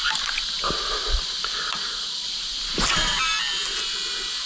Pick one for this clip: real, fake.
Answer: real